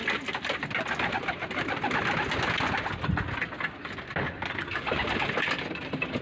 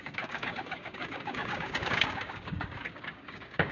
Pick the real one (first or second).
first